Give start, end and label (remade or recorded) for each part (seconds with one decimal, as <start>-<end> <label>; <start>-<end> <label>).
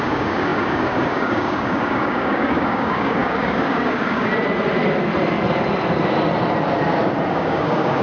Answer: 0.0-4.3 remade; 4.3-7.3 recorded; 7.3-8.0 remade